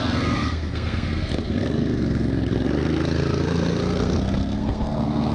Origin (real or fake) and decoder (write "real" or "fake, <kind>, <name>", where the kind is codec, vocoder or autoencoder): fake, codec, SNAC